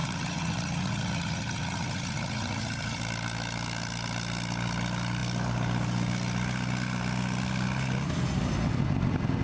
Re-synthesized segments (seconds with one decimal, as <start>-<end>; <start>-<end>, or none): 0.0-3.0